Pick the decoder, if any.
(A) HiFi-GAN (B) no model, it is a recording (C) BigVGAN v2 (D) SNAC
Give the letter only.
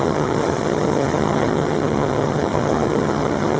A